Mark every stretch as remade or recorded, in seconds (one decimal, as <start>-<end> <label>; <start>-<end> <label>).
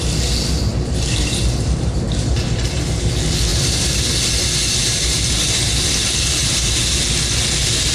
0.0-0.7 recorded; 0.7-3.1 remade; 3.1-3.5 recorded; 3.5-4.1 remade; 4.1-4.8 recorded; 4.8-7.0 remade; 7.0-7.9 recorded